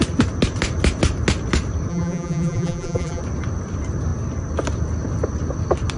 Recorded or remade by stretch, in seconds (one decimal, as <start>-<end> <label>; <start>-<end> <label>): 0.0-1.9 recorded; 1.9-3.2 remade; 3.2-6.0 recorded